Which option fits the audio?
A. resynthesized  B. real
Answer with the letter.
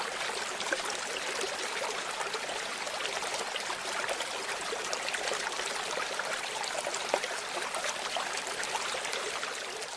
A